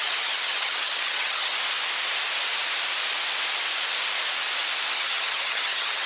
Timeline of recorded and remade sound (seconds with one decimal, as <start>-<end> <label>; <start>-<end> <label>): 0.0-1.5 remade; 1.5-4.9 recorded; 4.9-6.1 remade